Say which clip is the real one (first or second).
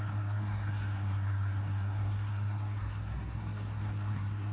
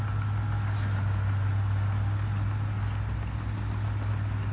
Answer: second